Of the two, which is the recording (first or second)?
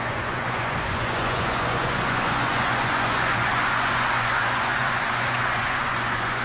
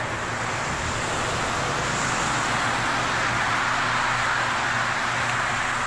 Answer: second